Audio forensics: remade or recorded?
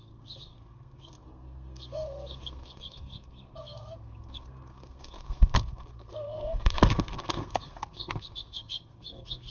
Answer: remade